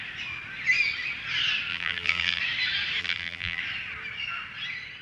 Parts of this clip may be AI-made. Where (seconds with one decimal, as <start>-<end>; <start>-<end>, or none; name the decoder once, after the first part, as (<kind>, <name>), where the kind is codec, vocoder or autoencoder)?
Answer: 1.7-2.4 (vocoder, BigVGAN v2); 3.0-3.6